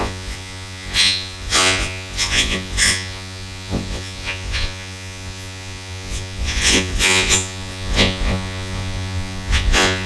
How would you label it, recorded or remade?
remade